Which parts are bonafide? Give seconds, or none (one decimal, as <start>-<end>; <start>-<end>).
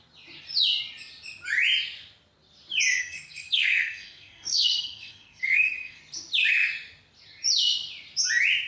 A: 0.0-3.0; 6.0-8.7